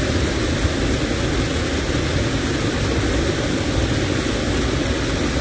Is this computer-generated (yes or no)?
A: no